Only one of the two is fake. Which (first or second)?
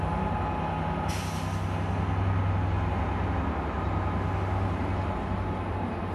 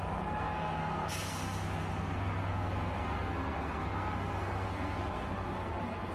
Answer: second